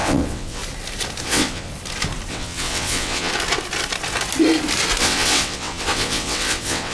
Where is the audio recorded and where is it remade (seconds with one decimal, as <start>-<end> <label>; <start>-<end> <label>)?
0.0-0.6 remade; 0.6-1.2 recorded; 1.2-1.7 remade; 1.7-2.3 recorded; 2.3-3.3 remade; 3.3-5.0 recorded; 5.0-6.9 remade